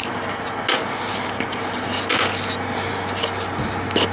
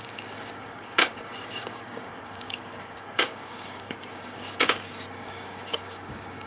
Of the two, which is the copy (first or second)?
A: second